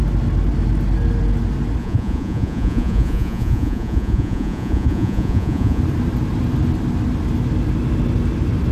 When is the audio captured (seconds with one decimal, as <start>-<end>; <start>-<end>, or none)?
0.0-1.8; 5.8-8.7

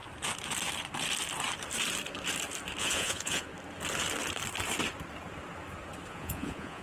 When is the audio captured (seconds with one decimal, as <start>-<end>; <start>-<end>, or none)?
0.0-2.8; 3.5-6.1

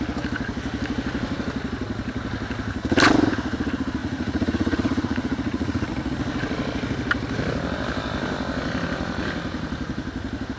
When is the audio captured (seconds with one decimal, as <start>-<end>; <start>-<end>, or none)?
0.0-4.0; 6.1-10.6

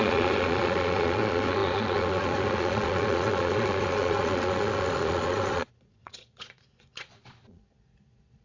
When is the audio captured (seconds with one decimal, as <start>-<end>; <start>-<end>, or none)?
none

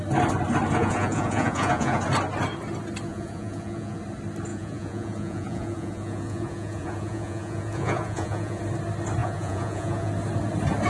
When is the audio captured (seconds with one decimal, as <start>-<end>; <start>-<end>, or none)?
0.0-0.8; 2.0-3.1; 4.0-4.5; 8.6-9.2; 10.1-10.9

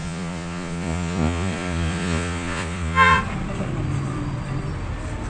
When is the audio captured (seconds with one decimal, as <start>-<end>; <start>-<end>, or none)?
3.2-5.3